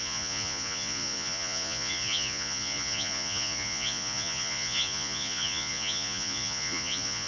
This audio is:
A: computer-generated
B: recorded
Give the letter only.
A